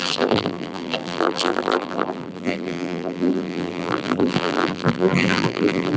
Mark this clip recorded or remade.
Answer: remade